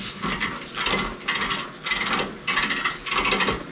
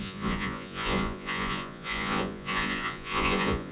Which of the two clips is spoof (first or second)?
second